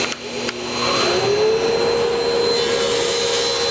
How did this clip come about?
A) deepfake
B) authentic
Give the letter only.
B